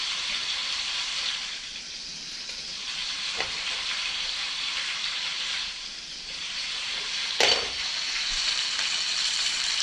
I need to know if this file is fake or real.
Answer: fake